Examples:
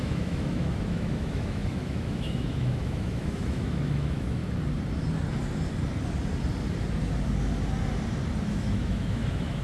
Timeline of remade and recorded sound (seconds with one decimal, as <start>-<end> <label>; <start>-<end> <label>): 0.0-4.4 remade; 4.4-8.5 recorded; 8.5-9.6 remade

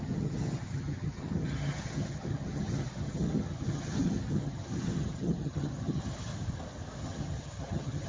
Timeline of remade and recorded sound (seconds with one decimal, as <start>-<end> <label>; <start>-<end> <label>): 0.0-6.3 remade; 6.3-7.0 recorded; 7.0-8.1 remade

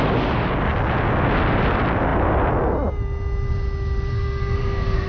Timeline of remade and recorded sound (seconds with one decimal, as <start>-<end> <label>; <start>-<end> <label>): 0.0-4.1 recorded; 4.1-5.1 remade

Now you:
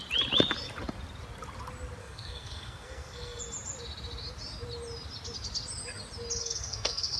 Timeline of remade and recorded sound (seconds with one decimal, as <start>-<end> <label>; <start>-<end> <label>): 0.0-2.0 recorded; 2.0-3.4 remade; 3.4-6.4 recorded; 6.4-7.2 remade

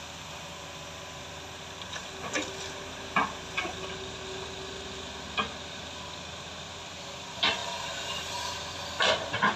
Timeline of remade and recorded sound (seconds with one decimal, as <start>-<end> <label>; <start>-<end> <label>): 0.0-7.6 recorded; 7.6-8.9 remade; 8.9-9.6 recorded

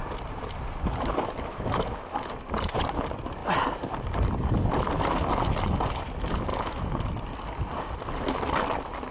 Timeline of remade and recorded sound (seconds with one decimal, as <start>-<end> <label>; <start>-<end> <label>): 0.0-1.5 recorded; 1.5-2.1 remade; 2.1-6.5 recorded; 6.5-7.0 remade; 7.0-9.1 recorded

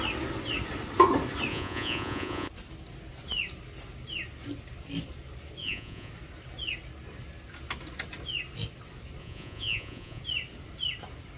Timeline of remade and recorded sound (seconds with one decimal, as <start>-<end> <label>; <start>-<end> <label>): 0.0-1.5 recorded; 1.5-2.5 remade; 2.5-5.6 recorded; 5.6-6.1 remade; 6.1-9.2 recorded; 9.2-10.2 remade; 10.2-11.4 recorded